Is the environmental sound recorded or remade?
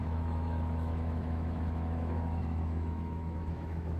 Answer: remade